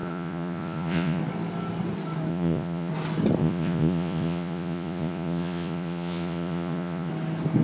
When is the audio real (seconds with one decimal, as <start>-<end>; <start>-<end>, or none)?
1.2-2.3; 2.9-3.4; 7.1-7.6